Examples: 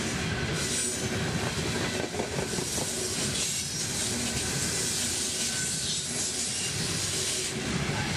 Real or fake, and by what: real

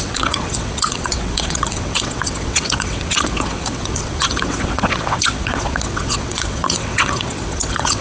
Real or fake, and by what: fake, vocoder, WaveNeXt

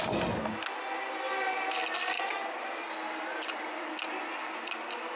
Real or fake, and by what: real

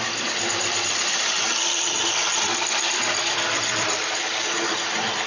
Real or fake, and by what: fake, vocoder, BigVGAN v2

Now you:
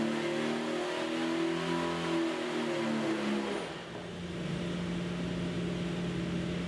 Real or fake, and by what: real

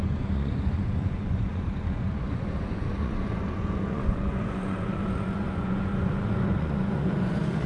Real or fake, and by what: fake, vocoder, Vocos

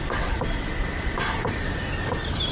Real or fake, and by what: real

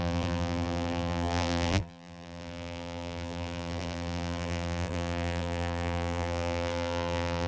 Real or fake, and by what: fake, vocoder, BigVGAN v2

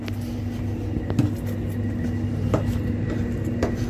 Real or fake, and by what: real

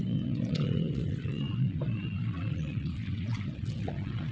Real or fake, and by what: fake, vocoder, Vocos